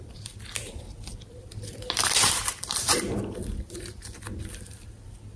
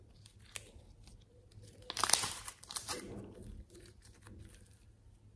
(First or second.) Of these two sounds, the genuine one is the second